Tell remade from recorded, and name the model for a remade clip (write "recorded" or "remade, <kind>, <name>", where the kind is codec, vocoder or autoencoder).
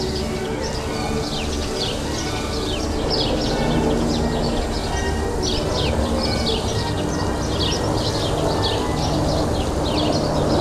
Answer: recorded